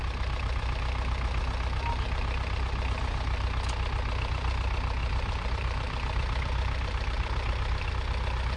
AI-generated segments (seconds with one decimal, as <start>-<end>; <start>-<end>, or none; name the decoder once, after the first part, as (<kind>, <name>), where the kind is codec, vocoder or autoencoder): 5.0-7.9 (vocoder, BigVGAN v2)

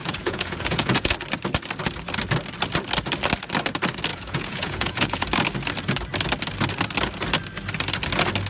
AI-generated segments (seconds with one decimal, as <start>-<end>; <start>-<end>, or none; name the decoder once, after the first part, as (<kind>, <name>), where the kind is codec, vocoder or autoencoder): 0.0-1.1 (vocoder, Vocos); 4.1-5.3